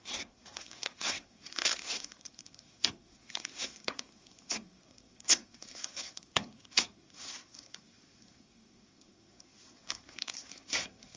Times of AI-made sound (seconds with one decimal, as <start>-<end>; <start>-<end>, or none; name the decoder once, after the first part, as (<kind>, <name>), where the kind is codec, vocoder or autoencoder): 0.0-11.2 (codec, SNAC)